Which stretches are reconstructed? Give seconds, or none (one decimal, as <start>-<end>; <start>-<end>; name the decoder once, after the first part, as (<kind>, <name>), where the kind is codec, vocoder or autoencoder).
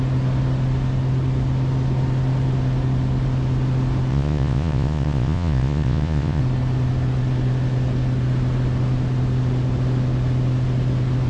4.1-6.4 (vocoder, Vocos)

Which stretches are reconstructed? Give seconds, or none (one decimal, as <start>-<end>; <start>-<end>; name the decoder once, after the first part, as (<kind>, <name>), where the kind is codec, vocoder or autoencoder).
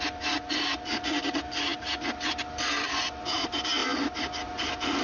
none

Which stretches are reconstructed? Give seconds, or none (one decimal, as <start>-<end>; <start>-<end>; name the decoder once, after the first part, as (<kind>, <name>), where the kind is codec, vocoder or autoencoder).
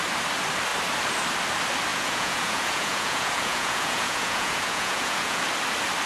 1.9-5.4 (vocoder, Vocos)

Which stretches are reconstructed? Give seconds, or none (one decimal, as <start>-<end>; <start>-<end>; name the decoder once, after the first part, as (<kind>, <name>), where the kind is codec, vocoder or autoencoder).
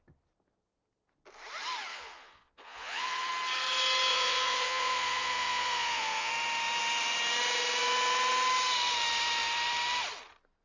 1.9-3.3 (vocoder, Vocos); 4.1-6.3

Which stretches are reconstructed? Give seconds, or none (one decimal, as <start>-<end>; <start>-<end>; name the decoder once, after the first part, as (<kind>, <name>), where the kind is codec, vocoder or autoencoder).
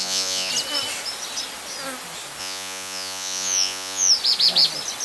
0.0-0.5 (vocoder, Vocos); 2.4-4.1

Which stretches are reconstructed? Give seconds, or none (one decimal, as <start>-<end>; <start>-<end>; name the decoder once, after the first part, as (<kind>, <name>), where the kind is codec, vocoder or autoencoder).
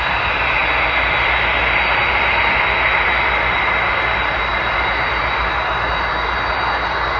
none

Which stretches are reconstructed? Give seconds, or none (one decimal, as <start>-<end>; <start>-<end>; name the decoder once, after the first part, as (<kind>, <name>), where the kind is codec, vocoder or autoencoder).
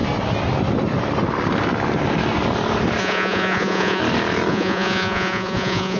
3.0-4.0 (vocoder, Vocos); 4.5-6.0